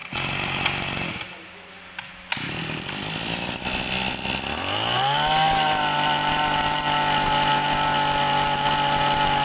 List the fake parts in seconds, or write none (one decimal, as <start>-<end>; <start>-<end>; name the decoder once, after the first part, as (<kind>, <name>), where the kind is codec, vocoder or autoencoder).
none